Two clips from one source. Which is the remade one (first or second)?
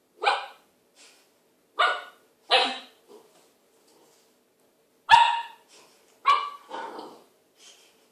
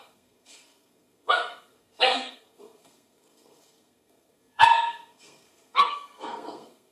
second